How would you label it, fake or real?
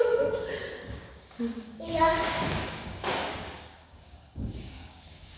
fake